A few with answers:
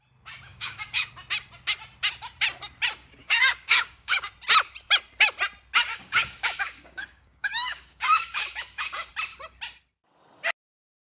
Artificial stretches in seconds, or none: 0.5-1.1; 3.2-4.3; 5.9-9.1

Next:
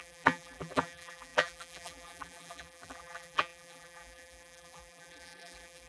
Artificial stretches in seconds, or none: 0.0-5.9

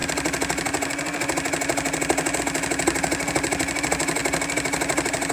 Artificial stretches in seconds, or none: none